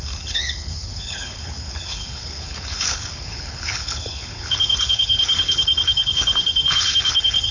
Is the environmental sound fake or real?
fake